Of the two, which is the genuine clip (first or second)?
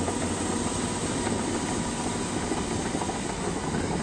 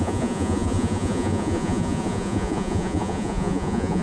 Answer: first